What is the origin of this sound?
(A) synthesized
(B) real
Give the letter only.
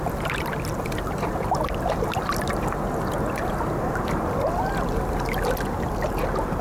B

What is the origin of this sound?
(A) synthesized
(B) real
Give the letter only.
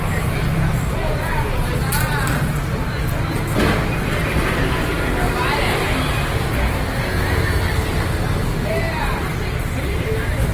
B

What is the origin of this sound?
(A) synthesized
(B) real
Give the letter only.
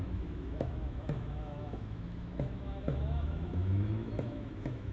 A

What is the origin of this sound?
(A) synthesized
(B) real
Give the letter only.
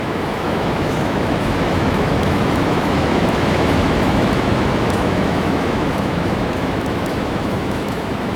A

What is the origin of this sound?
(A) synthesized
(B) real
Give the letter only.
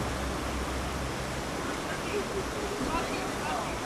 B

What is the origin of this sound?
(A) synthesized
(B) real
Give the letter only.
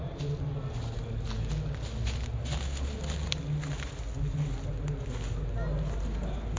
B